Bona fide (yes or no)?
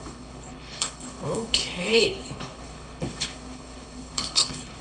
no